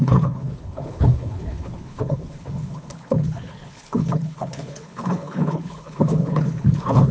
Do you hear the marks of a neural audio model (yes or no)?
yes